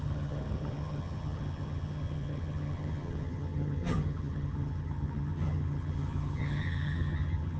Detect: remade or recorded remade